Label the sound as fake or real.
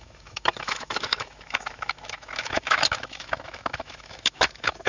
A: fake